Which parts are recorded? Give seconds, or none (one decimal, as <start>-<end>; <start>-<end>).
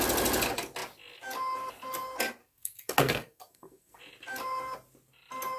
0.0-2.4; 4.0-5.6